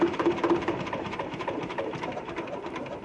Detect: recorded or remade remade